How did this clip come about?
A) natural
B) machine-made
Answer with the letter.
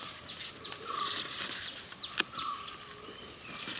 A